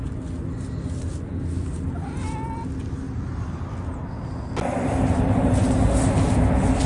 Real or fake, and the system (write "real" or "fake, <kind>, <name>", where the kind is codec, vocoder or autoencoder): real